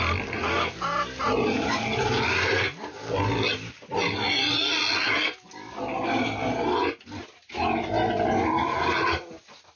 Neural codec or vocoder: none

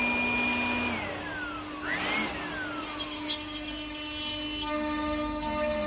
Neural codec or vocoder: none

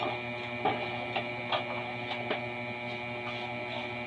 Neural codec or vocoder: none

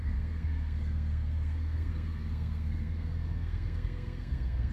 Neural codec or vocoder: codec, SNAC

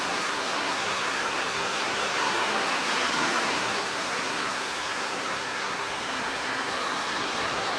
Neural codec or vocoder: codec, SNAC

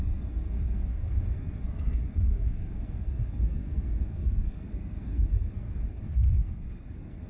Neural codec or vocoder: codec, SNAC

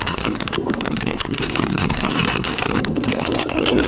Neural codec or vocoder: codec, SNAC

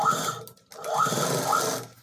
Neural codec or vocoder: none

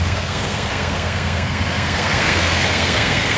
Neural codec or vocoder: codec, SNAC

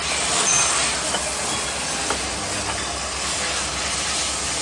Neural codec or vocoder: none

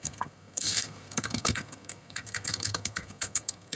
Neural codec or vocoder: codec, SNAC